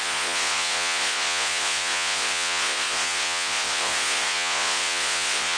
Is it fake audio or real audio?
fake